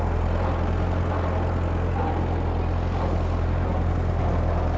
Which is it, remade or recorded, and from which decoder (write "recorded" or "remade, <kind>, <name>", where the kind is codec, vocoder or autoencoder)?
recorded